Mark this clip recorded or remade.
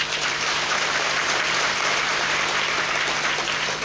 remade